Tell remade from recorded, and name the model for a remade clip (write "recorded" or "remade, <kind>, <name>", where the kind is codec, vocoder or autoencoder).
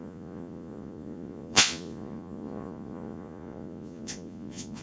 remade, vocoder, Vocos